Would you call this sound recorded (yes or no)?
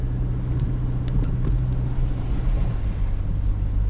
yes